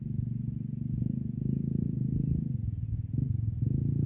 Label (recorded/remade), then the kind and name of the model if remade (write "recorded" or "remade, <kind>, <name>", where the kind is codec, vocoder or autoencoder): recorded